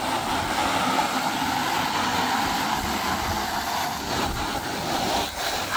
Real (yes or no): yes